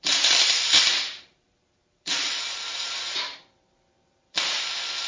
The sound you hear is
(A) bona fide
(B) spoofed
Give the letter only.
B